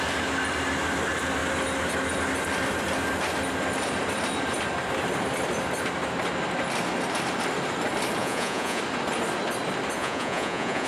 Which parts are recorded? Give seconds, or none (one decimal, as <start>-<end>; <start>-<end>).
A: 0.0-8.2; 8.8-10.0